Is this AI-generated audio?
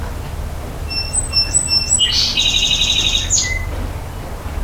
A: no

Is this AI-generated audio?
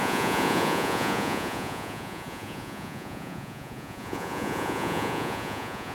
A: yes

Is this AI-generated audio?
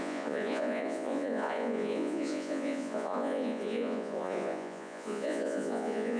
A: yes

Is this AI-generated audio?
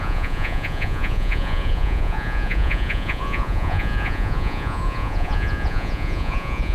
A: yes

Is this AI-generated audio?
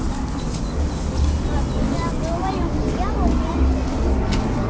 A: no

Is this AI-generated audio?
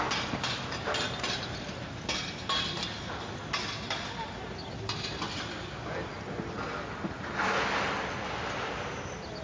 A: no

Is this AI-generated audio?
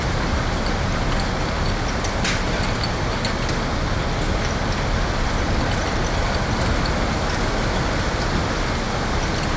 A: no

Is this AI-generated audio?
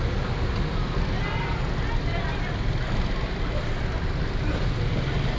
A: no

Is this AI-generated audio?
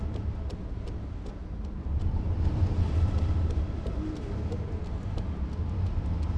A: no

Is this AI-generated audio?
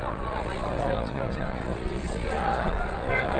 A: yes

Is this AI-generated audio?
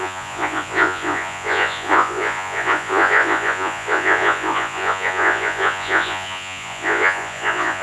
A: yes